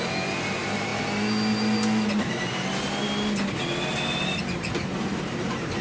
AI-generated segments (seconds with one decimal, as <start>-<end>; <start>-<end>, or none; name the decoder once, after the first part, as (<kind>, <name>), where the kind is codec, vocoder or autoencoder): 0.0-0.9 (vocoder, BigVGAN v2); 4.4-5.8